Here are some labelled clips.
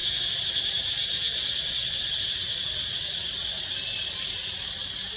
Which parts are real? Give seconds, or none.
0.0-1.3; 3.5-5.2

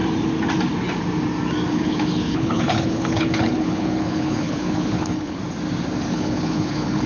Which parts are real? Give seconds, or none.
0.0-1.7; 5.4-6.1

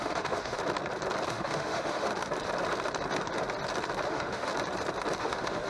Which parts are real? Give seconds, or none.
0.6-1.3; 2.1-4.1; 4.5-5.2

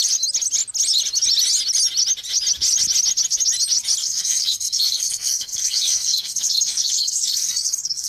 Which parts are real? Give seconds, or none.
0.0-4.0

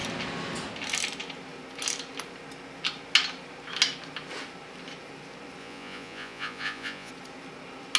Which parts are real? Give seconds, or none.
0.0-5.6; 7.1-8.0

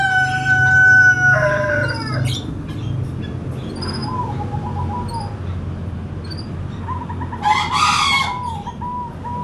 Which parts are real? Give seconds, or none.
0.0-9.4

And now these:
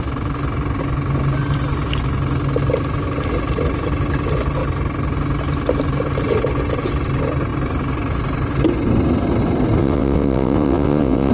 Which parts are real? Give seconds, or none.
0.0-9.8

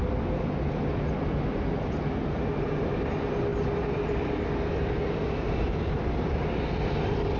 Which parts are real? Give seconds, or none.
0.0-7.4